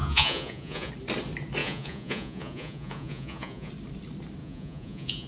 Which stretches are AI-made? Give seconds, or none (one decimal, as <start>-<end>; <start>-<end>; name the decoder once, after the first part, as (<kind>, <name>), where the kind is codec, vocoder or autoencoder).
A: 0.0-0.9 (vocoder, Vocos); 1.6-3.7; 4.4-5.3